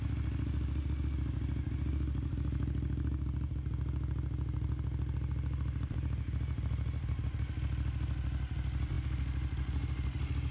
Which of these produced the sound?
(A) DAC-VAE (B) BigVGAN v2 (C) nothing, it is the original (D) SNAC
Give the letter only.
C